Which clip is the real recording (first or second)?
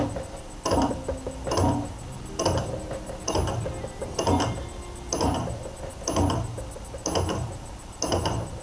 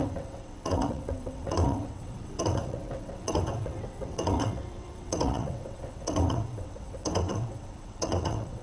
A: first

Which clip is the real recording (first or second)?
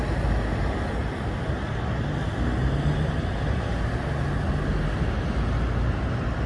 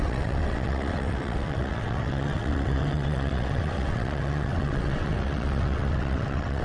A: first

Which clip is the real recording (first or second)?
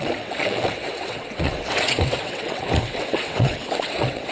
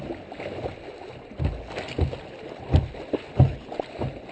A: second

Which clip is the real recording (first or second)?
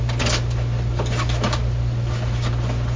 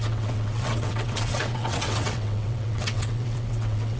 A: first